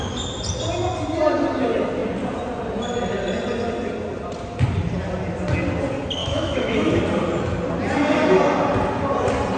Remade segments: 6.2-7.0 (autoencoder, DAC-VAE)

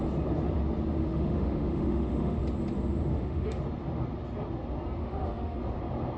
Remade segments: 1.0-2.4 (autoencoder, DAC-VAE); 3.1-3.6; 5.0-5.6